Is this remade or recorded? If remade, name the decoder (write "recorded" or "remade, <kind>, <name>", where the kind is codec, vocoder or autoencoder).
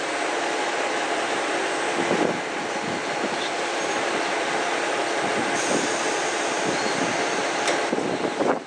recorded